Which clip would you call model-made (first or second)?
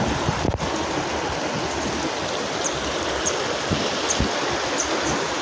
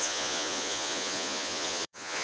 second